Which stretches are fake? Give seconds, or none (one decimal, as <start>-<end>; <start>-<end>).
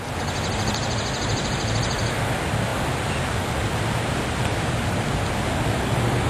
none